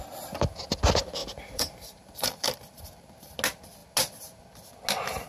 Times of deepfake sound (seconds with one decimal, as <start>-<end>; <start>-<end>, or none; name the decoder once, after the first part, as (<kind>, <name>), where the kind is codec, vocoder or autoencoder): 1.2-2.8 (vocoder, BigVGAN v2)